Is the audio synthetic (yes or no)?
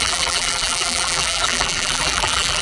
yes